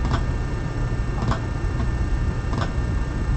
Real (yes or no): no